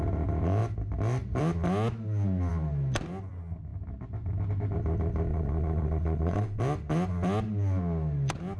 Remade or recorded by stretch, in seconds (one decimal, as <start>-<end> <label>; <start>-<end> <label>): 0.0-5.3 recorded; 5.3-6.6 remade; 6.6-8.6 recorded